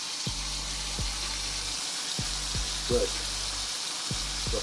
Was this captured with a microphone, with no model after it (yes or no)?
yes